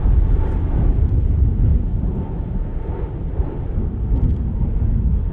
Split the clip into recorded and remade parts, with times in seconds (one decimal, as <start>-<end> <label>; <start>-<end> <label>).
0.0-5.3 recorded